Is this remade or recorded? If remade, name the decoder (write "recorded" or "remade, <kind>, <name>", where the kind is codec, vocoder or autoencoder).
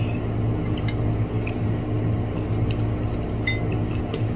recorded